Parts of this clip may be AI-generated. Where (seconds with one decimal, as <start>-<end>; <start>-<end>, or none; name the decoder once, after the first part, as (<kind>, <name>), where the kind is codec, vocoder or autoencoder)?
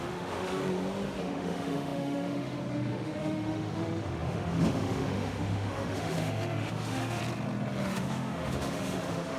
0.0-0.6 (autoencoder, DAC-VAE); 1.2-7.2; 7.8-9.4